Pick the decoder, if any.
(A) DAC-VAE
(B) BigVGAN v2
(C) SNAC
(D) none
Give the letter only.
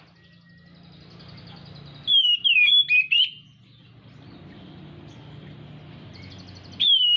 D